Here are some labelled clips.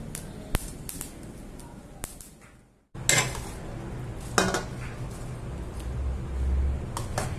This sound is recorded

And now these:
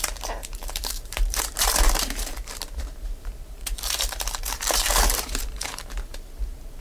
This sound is remade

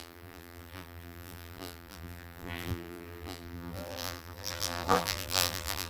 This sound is remade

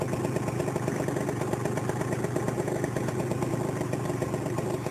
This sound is recorded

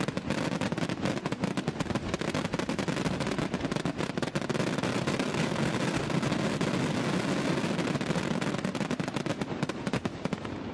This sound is recorded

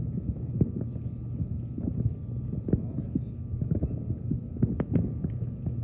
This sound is recorded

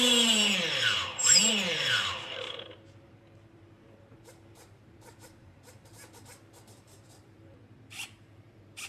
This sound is remade